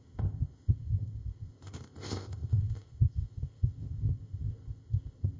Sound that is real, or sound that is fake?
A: fake